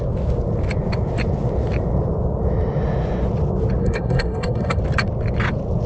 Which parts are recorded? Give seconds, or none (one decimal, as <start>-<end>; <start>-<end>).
0.0-3.8; 4.8-5.9